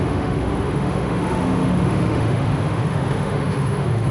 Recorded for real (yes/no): no